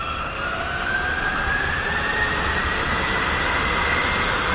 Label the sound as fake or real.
fake